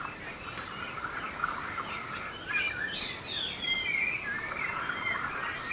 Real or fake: real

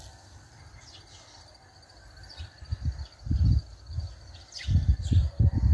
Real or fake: real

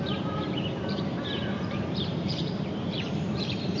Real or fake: fake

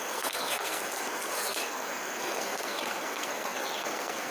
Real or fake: fake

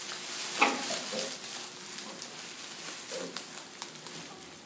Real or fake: real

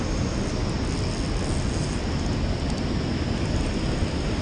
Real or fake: real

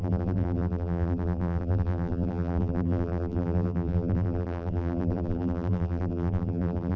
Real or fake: fake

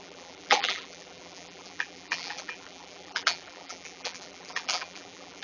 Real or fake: fake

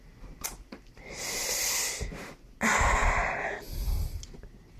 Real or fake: real